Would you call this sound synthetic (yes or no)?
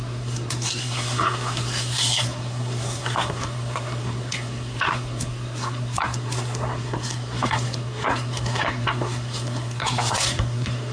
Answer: yes